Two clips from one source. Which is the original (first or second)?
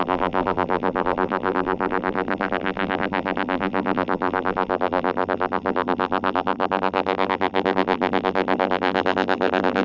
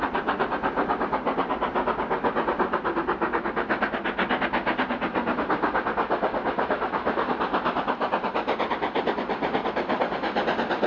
second